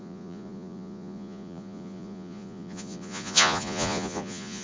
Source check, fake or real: fake